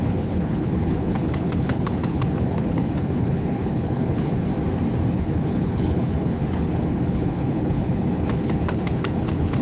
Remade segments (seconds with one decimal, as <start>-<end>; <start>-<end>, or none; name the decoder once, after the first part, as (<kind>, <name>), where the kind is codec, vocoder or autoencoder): 0.0-4.5 (codec, HILCodec); 5.1-9.6